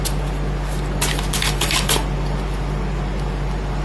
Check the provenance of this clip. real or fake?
real